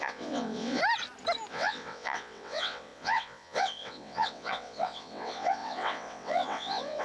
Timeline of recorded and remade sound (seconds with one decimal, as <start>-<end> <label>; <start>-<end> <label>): 0.0-0.8 remade; 0.8-1.5 recorded; 1.5-7.0 remade